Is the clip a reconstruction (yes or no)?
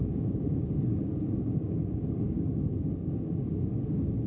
yes